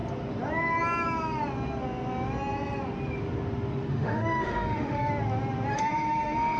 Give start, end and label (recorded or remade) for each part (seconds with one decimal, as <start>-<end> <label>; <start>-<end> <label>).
0.0-3.9 recorded; 3.9-5.1 remade; 5.1-5.7 recorded; 5.7-6.6 remade